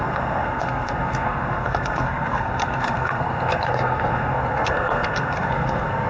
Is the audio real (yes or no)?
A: no